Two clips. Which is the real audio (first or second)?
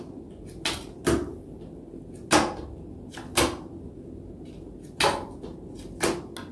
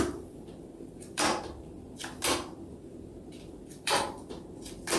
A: first